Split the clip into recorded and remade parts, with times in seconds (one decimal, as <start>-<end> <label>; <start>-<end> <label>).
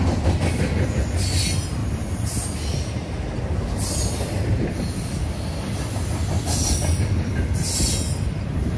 0.0-1.8 recorded; 1.8-4.7 remade; 4.7-8.8 recorded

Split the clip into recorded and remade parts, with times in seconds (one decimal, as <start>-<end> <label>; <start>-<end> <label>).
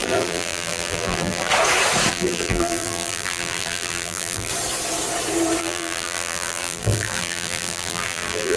0.0-1.5 remade; 1.5-2.1 recorded; 2.1-4.5 remade; 4.5-5.6 recorded; 5.6-8.6 remade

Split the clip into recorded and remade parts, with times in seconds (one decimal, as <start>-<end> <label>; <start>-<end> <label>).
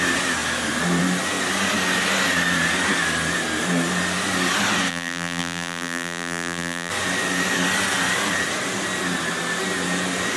0.0-4.9 recorded; 4.9-6.9 remade; 6.9-10.4 recorded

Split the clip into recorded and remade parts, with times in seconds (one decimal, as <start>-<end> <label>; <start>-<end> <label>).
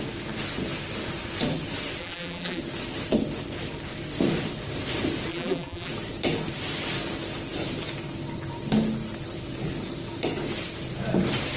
0.0-2.0 recorded; 2.0-2.6 remade; 2.6-5.3 recorded; 5.3-5.9 remade; 5.9-11.6 recorded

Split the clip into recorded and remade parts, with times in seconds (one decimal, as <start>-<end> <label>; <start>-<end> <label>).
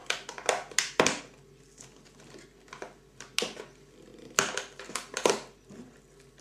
0.0-6.4 recorded